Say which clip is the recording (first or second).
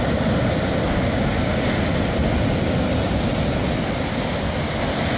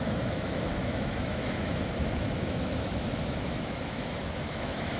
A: first